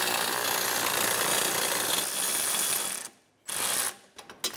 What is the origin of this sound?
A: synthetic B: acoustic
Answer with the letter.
B